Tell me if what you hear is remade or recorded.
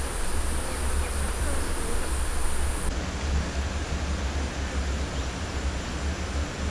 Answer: recorded